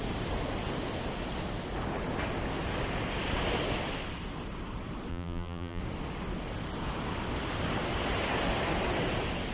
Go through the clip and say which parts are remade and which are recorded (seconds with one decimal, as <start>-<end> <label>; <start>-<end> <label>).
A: 0.0-5.1 recorded; 5.1-5.8 remade; 5.8-9.5 recorded